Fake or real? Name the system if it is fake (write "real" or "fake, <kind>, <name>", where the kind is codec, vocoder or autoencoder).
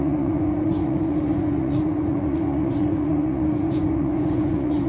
fake, vocoder, Vocos